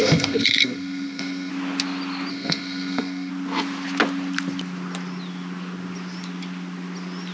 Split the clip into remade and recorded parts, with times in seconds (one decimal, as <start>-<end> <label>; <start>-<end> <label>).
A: 0.0-1.5 remade; 1.5-2.3 recorded; 2.3-3.3 remade; 3.3-7.3 recorded